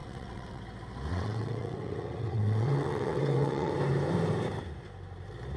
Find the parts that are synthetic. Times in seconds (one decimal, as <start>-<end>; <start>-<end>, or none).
0.0-0.6; 1.1-3.7

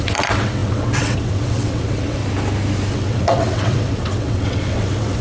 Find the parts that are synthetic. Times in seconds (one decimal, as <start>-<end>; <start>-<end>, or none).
0.0-2.2; 2.9-5.2

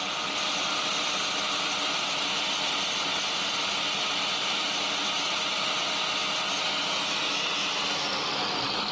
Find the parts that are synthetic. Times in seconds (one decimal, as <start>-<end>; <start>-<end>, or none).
none

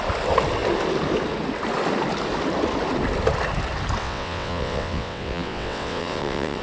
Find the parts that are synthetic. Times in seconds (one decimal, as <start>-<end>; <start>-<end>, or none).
4.0-6.6

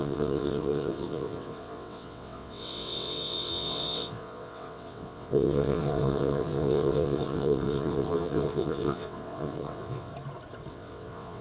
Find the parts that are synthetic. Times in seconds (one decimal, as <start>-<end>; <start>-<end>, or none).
0.0-10.1; 10.7-11.4

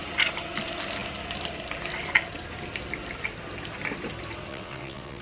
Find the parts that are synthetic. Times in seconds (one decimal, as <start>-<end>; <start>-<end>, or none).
4.5-5.2